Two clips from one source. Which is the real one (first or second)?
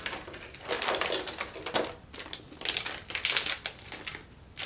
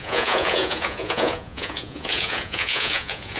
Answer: first